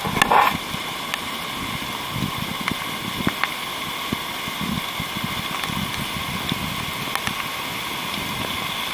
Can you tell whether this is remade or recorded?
recorded